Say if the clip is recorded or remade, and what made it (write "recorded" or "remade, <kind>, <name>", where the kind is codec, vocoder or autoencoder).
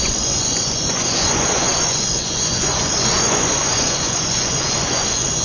remade, vocoder, Vocos